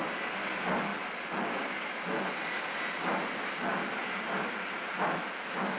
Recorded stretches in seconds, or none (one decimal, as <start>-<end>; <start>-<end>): 0.0-5.8